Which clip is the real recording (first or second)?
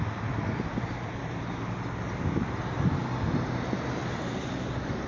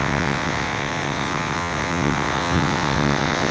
first